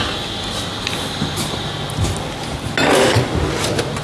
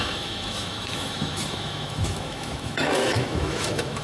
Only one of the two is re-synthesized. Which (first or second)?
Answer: second